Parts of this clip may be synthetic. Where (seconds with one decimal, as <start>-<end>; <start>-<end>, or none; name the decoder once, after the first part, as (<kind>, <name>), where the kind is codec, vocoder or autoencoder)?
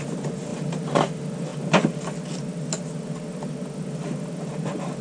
0.0-0.5 (vocoder, BigVGAN v2); 1.0-1.5; 4.5-5.0